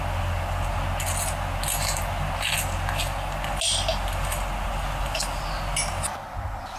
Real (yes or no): yes